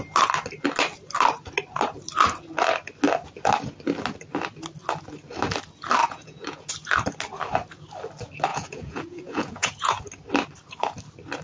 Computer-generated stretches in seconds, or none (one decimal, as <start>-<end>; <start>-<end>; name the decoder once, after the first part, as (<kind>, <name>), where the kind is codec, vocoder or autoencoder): 6.0-6.7 (vocoder, Vocos); 8.5-10.0

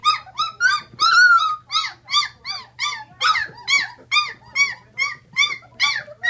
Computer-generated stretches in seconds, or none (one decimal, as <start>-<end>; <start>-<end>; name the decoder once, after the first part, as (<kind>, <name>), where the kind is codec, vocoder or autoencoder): 0.0-0.6 (vocoder, BigVGAN v2)

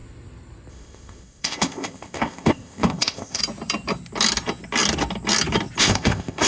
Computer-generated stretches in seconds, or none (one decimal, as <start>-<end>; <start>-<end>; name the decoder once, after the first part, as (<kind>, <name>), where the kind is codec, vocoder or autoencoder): 0.7-3.4 (codec, ZipCodec); 5.8-6.5